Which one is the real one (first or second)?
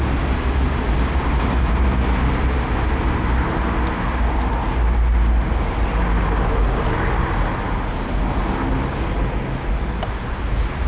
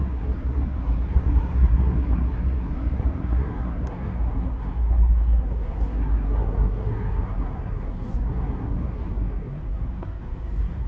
first